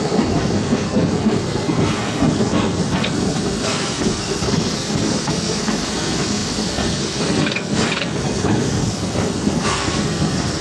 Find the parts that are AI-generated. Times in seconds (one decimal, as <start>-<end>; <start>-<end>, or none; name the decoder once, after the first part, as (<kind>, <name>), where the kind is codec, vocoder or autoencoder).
0.0-10.6 (codec, SNAC)

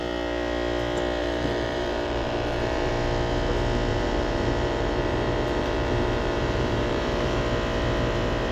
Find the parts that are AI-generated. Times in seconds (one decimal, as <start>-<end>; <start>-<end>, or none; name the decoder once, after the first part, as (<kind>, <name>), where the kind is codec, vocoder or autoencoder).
1.2-2.9 (vocoder, BigVGAN v2); 3.9-7.4

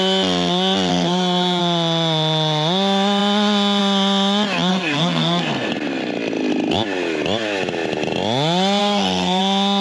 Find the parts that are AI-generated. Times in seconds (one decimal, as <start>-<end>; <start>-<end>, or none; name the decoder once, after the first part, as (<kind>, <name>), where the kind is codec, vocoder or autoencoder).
0.9-1.6 (codec, SNAC); 4.7-5.7; 8.8-9.4

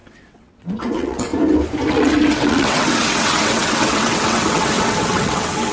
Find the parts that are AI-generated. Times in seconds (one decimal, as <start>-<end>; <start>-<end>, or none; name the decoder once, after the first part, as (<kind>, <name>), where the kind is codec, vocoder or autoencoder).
0.0-1.3 (vocoder, WaveNeXt); 1.9-5.7

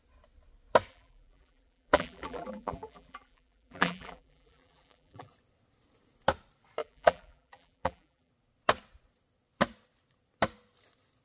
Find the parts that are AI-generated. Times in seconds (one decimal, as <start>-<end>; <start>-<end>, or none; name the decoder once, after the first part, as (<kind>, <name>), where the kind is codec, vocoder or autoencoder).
0.9-5.3 (vocoder, BigVGAN v2); 6.8-8.3

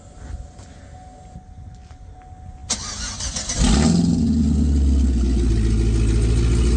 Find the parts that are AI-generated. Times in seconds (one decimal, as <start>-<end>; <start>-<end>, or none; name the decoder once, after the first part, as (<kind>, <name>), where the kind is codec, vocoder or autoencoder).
none